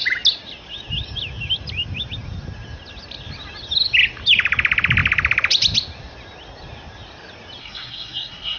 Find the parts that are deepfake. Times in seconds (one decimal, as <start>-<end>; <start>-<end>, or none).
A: 7.6-8.6